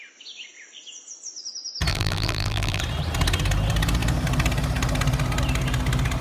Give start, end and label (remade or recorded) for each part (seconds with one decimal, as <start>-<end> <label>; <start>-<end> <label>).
0.0-1.9 recorded; 1.9-2.8 remade; 2.8-6.2 recorded